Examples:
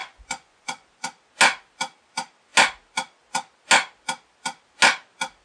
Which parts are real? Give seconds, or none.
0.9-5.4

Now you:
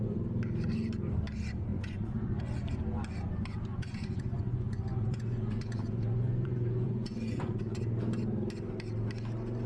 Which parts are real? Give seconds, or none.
0.0-1.7; 2.4-3.7; 7.8-9.7

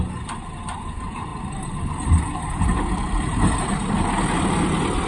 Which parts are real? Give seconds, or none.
0.0-5.1

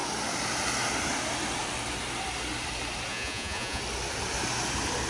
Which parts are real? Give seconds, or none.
0.0-3.1; 3.8-5.1

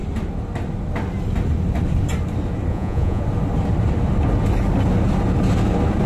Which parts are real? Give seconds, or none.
0.0-2.7; 3.2-6.1